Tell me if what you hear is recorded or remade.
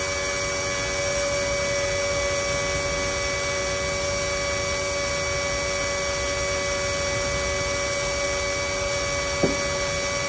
recorded